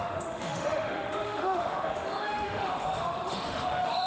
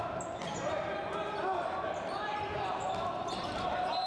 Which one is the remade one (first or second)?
first